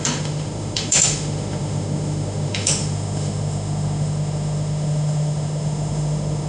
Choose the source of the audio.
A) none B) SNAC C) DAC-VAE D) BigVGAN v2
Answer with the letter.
C